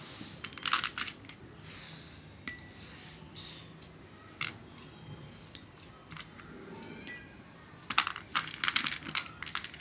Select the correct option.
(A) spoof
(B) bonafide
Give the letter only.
B